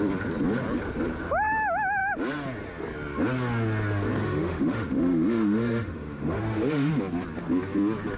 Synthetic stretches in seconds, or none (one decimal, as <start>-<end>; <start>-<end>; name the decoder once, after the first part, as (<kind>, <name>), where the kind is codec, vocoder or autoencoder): 4.2-6.9 (autoencoder, DAC-VAE)